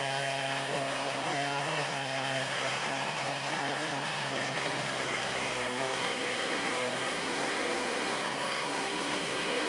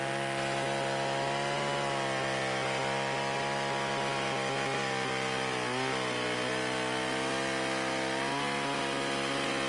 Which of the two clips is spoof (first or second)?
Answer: first